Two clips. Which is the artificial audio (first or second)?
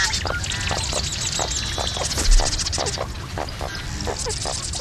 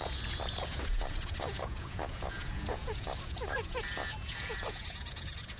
second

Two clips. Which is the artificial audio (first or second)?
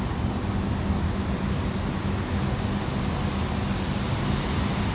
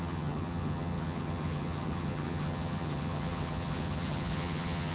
second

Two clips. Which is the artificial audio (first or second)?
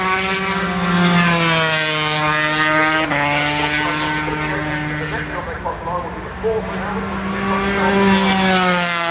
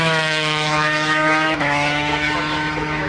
second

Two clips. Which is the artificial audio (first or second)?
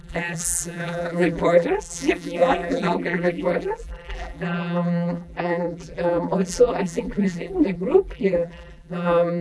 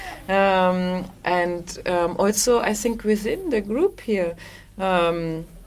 first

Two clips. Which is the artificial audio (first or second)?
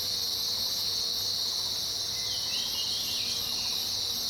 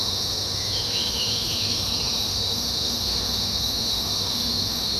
second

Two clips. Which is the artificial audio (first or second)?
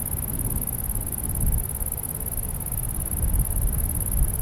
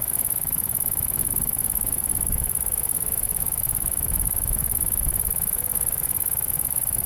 second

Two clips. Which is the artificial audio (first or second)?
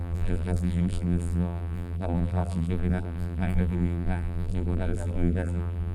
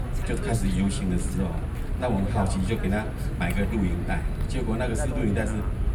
first